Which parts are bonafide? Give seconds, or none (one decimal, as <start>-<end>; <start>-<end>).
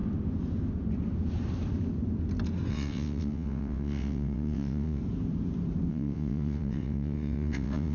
0.0-2.7; 5.0-5.9